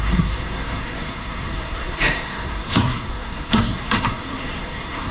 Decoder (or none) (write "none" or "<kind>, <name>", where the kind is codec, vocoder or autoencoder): codec, SNAC